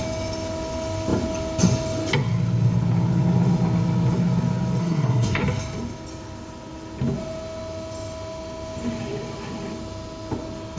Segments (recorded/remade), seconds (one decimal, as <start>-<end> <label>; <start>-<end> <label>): 0.0-4.8 recorded; 4.8-5.4 remade; 5.4-10.8 recorded